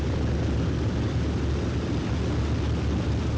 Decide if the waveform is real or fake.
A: real